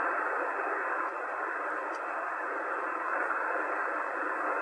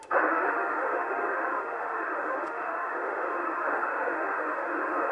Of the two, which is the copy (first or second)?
second